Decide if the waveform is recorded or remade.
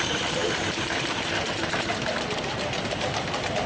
remade